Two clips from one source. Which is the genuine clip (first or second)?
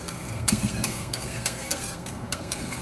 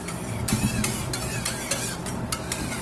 second